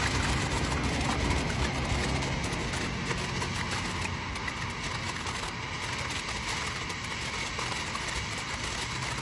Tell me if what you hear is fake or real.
real